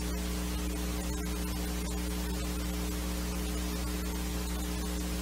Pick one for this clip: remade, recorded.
recorded